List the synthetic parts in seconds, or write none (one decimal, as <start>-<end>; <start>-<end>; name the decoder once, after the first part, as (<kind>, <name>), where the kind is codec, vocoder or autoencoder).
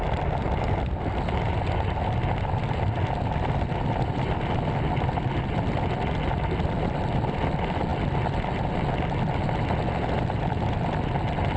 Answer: none